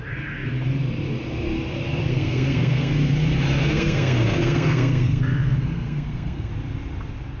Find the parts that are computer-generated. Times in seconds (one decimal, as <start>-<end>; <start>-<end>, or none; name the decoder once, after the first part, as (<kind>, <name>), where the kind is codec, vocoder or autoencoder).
2.0-2.9 (codec, SNAC); 3.6-6.5